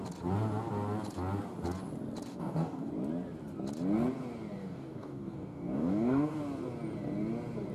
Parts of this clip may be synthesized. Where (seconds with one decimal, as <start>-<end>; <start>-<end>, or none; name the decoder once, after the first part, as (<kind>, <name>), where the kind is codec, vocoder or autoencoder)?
2.3-2.9 (codec, DAC); 4.6-6.4